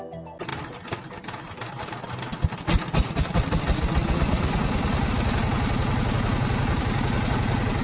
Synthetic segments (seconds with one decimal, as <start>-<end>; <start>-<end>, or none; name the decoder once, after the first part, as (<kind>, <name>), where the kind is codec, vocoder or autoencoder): none

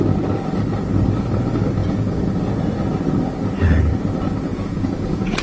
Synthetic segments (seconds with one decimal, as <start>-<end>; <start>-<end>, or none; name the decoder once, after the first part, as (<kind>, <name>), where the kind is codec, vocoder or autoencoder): 1.8-2.3 (vocoder, Vocos); 4.5-5.4

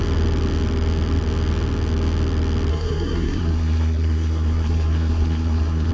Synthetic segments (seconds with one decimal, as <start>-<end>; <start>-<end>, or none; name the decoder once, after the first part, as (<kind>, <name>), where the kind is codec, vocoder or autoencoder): 2.7-5.9 (codec, SNAC)

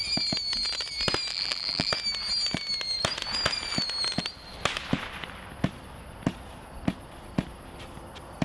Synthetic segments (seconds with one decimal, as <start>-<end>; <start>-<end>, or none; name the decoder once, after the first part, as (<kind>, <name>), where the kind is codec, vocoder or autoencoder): 1.3-1.9 (vocoder, BigVGAN v2)